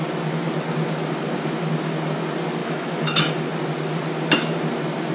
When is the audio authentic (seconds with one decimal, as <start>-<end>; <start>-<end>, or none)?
0.0-2.6; 3.3-5.1